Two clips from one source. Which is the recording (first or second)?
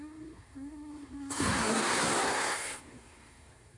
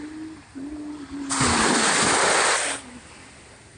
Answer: second